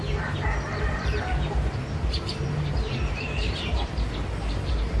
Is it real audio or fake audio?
fake